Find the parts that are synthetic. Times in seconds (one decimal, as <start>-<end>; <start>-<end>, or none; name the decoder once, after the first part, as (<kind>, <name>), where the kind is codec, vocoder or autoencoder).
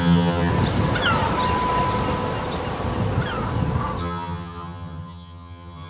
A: 0.0-0.5 (vocoder, HiFi-GAN); 4.0-5.9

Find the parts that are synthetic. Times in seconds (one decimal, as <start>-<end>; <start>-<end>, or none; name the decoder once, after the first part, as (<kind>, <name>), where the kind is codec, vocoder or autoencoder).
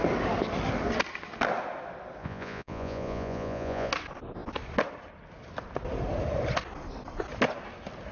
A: 2.2-3.9 (vocoder, Vocos)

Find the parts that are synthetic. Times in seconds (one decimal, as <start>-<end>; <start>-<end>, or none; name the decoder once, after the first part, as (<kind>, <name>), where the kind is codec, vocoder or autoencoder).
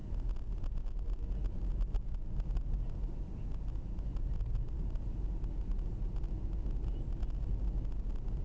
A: none